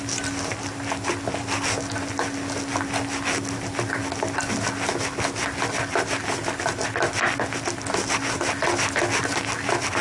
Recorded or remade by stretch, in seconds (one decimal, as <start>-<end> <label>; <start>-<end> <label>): 0.0-10.0 recorded